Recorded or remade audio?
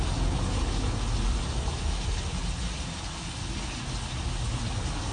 recorded